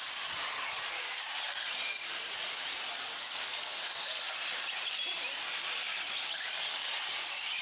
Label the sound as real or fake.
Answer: real